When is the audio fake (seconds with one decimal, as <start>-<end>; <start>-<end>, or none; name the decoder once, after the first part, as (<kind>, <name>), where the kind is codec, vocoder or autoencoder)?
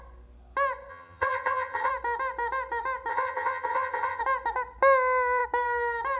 0.9-1.9 (vocoder, HiFi-GAN); 3.1-4.2